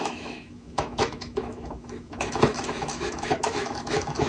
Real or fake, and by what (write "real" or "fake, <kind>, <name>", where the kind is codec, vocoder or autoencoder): fake, autoencoder, DAC-VAE